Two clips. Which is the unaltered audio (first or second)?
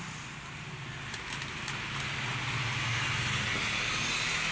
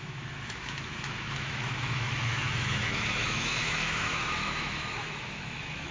first